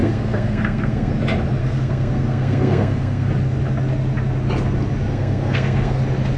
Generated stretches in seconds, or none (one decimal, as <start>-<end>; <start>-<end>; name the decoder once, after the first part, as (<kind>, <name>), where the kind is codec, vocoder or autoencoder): 0.0-1.1 (codec, SNAC); 1.6-3.3; 5.1-6.0